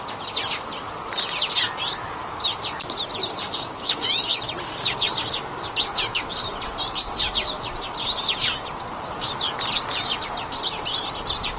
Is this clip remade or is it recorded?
recorded